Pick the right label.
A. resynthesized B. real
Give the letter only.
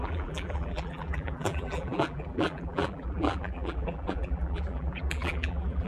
A